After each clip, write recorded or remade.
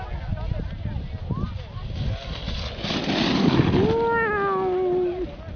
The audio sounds recorded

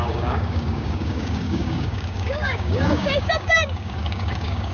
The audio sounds remade